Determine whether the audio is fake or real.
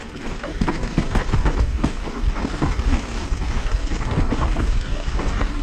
fake